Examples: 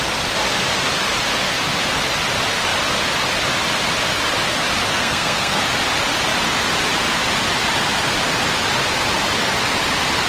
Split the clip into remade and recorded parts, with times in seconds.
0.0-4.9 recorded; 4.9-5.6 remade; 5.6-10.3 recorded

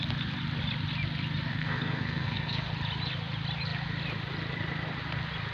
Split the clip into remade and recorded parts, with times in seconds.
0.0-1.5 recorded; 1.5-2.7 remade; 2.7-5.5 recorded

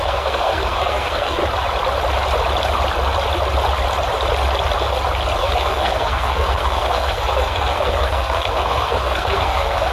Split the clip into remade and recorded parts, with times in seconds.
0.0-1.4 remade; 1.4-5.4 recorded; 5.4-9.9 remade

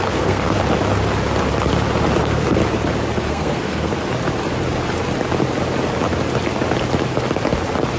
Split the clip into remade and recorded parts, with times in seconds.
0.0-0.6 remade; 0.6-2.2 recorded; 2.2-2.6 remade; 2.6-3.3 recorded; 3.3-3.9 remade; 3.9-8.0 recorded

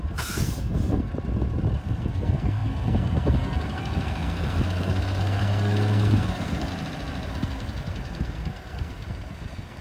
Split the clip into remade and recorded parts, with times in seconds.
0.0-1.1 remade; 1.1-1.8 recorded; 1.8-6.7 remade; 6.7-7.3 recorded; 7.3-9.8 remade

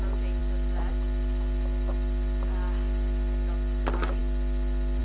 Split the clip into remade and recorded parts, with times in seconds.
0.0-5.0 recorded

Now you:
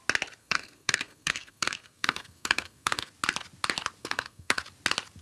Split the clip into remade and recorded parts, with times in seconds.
0.0-0.4 recorded; 0.4-3.1 remade; 3.1-4.0 recorded; 4.0-4.6 remade; 4.6-5.2 recorded